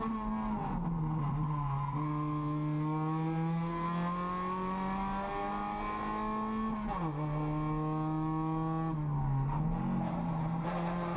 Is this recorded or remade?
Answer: recorded